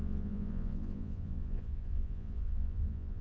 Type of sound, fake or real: fake